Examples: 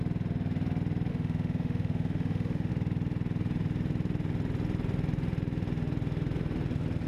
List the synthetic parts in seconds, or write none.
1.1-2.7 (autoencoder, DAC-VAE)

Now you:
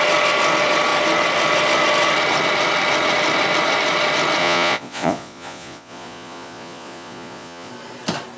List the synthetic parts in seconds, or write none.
4.4-7.7 (vocoder, Vocos)

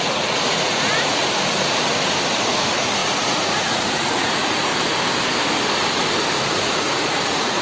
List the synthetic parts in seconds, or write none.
0.0-1.2 (vocoder, Vocos); 2.4-4.7; 6.5-7.6

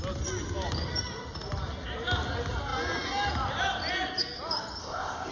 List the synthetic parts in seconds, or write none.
4.8-5.3 (codec, ZipCodec)